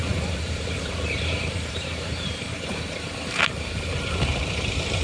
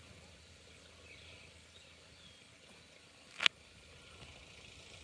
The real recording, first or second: second